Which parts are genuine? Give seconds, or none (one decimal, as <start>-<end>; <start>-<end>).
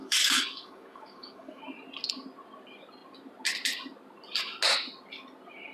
1.6-5.7